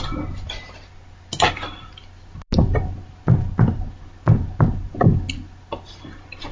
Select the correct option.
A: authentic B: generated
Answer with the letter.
A